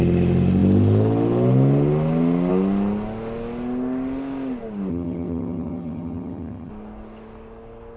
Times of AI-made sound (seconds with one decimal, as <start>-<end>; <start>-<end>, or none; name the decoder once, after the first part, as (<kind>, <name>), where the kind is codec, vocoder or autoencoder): 4.9-6.7 (vocoder, HiFi-GAN)